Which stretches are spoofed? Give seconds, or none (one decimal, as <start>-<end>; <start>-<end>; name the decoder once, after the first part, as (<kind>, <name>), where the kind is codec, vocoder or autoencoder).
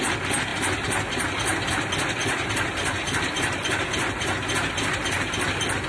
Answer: none